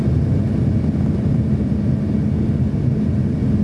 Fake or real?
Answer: real